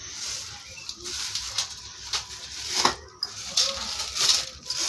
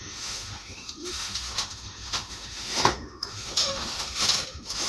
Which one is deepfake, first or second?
second